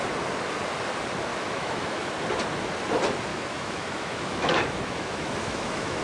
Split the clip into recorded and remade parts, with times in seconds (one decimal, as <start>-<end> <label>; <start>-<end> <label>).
0.0-1.3 recorded; 1.3-2.1 remade; 2.1-3.3 recorded; 3.3-6.0 remade